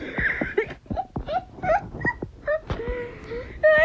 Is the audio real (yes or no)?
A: yes